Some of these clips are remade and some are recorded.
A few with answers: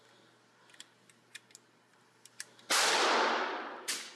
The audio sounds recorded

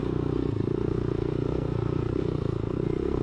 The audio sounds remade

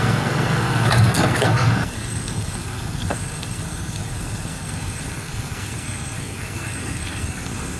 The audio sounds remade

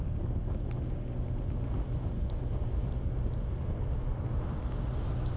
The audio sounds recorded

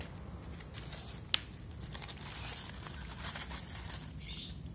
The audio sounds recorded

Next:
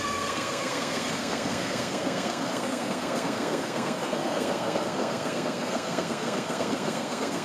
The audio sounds remade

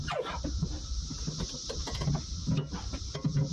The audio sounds recorded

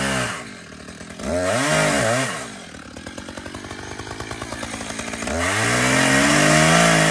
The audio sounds recorded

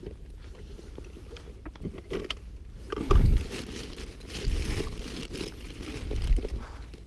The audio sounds recorded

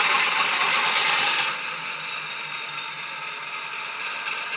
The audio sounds recorded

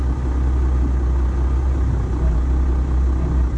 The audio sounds recorded